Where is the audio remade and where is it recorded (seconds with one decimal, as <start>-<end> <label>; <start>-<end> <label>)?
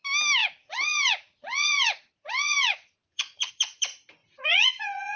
0.0-0.4 recorded; 0.4-3.5 remade; 3.5-4.2 recorded; 4.2-5.2 remade